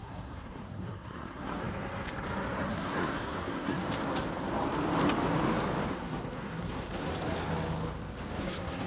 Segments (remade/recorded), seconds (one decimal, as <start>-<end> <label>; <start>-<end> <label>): 0.0-1.6 remade; 1.6-2.7 recorded; 2.7-3.8 remade; 3.8-5.9 recorded; 5.9-7.1 remade; 7.1-8.4 recorded; 8.4-8.9 remade